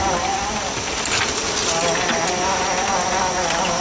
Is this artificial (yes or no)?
no